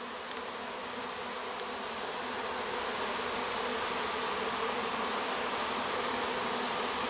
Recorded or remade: recorded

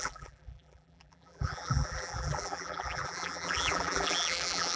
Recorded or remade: remade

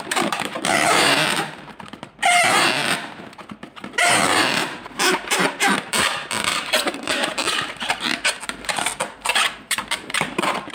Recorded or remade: remade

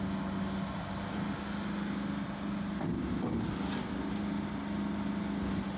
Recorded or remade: recorded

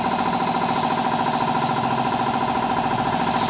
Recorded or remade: recorded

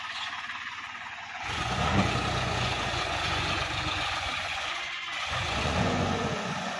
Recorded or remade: remade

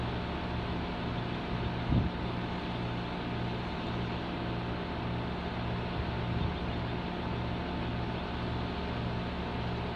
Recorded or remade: recorded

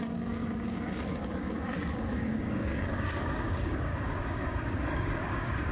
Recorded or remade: remade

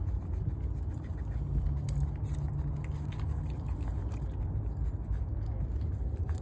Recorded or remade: recorded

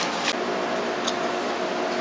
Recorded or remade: recorded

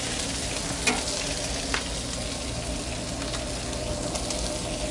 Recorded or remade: recorded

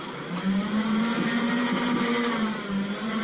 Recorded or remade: remade